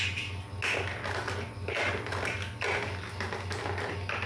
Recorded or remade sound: recorded